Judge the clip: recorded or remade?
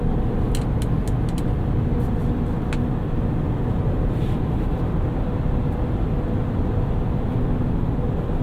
recorded